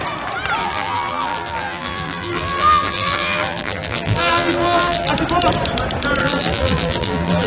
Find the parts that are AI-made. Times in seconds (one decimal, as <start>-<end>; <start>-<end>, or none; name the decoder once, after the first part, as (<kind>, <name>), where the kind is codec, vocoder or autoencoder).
0.6-5.1 (vocoder, BigVGAN v2); 6.2-7.5